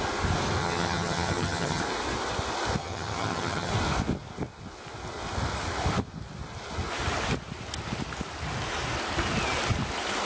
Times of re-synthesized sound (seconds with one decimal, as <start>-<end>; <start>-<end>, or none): 0.6-1.8; 2.8-3.7